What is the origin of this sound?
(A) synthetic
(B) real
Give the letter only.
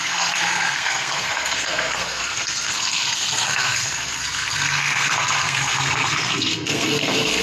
A